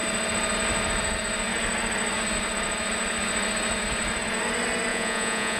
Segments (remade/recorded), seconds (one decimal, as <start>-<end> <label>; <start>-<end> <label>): 0.0-4.9 recorded; 4.9-5.6 remade